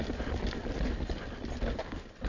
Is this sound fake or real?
real